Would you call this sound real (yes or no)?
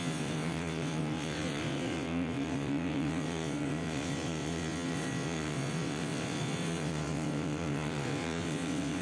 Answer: no